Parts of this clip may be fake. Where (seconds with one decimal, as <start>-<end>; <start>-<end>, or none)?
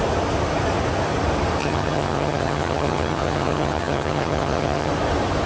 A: 1.6-4.9